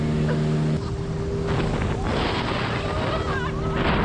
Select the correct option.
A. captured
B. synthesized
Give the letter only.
A